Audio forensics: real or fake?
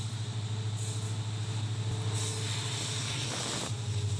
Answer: real